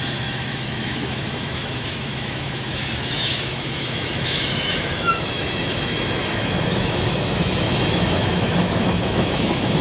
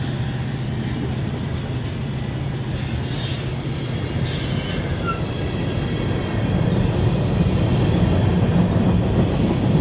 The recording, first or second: second